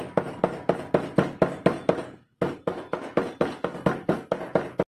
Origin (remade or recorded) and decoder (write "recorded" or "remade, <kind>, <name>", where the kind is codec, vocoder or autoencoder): recorded